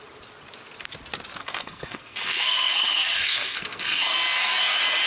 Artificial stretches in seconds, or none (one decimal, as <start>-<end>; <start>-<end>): 1.4-4.5